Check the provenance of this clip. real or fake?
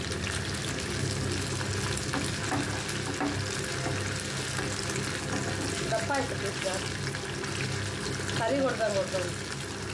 real